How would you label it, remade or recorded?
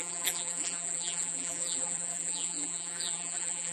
remade